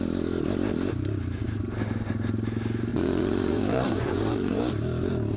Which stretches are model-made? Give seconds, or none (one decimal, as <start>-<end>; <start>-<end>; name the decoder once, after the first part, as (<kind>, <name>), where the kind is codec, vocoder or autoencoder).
2.9-4.6 (vocoder, Vocos)